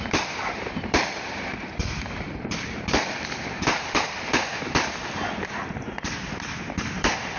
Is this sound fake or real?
fake